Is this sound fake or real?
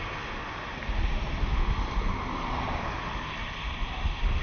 real